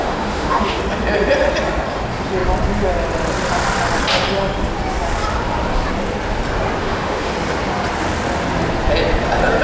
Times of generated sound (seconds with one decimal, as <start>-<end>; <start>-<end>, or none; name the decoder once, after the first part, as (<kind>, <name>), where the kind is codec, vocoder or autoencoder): 0.0-0.8 (autoencoder, DAC-VAE); 6.8-7.3